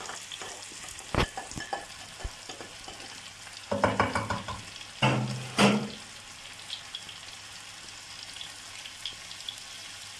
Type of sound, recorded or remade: recorded